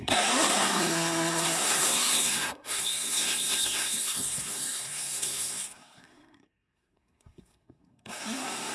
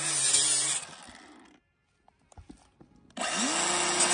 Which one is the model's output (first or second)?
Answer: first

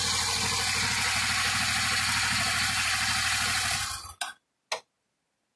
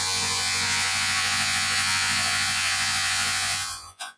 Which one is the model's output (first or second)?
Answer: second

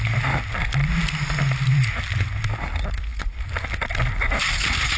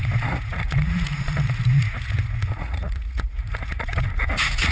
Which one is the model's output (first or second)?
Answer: second